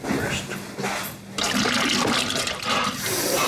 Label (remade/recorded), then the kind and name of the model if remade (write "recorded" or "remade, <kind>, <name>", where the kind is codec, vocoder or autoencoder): recorded